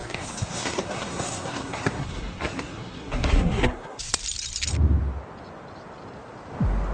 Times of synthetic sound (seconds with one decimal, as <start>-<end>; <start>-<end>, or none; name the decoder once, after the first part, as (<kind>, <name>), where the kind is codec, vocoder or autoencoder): 0.0-4.1 (codec, SNAC)